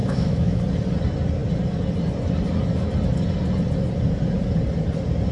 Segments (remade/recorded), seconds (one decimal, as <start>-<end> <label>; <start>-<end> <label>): 0.0-0.6 remade; 0.6-5.3 recorded